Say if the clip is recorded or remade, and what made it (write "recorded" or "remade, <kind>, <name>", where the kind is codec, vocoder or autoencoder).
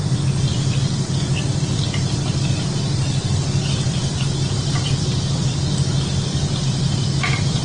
recorded